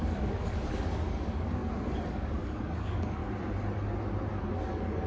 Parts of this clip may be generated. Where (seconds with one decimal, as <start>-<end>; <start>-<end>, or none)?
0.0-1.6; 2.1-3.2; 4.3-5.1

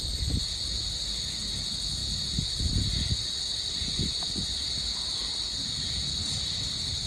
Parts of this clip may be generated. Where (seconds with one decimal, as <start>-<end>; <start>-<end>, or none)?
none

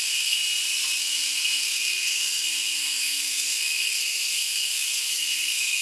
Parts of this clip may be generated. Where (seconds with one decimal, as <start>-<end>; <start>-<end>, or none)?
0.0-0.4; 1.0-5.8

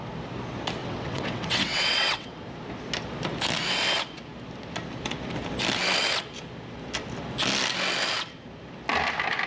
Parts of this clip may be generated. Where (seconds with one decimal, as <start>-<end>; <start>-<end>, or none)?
0.8-2.4

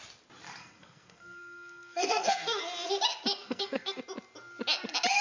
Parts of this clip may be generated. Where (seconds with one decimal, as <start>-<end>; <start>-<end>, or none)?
0.6-2.6; 3.4-4.0

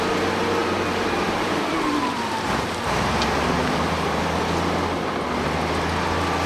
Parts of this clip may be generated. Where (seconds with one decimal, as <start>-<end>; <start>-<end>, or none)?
0.6-4.4

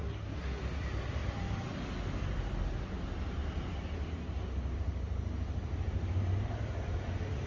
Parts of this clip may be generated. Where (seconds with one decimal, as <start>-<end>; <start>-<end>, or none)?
0.0-0.6

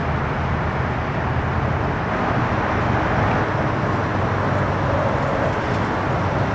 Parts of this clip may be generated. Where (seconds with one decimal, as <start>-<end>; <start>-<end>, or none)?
none